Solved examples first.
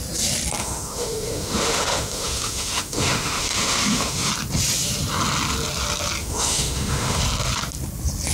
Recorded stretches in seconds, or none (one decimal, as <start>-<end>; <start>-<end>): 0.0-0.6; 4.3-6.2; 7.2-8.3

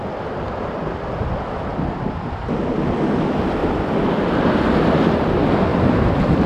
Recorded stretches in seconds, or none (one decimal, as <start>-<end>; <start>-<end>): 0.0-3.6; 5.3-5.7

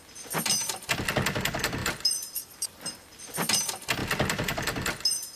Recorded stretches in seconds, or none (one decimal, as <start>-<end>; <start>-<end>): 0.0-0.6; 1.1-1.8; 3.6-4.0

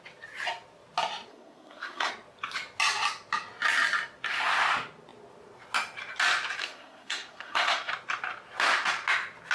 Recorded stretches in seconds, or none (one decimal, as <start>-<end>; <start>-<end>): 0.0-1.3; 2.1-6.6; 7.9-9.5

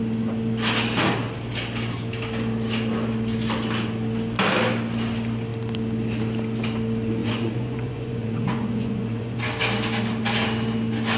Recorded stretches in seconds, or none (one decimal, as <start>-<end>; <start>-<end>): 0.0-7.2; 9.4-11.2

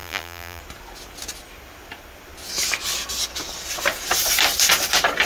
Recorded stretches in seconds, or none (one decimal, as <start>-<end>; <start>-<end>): 0.6-5.3

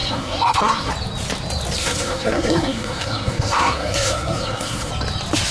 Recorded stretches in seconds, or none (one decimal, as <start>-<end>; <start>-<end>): 0.9-1.8; 4.9-5.5

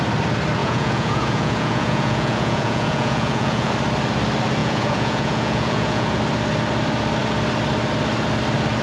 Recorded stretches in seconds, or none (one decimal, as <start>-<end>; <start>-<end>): 0.0-0.6; 3.7-4.6; 6.2-8.8